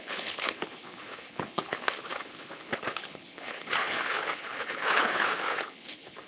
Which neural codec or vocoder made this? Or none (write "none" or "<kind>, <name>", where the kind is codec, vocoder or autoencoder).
codec, HILCodec